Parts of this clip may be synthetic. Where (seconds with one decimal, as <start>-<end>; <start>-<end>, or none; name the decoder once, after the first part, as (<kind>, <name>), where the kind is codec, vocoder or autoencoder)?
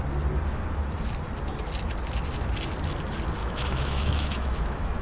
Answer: 3.4-5.0 (autoencoder, DAC-VAE)